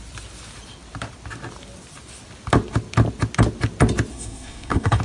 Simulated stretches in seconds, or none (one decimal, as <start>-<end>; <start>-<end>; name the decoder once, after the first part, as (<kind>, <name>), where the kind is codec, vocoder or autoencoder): 4.1-5.0 (codec, SNAC)